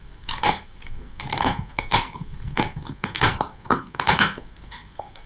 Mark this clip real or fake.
fake